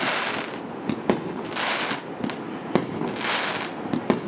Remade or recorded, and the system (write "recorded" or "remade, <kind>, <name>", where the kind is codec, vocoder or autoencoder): recorded